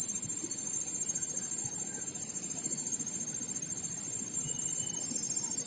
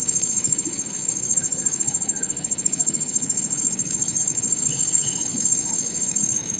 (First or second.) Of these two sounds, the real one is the first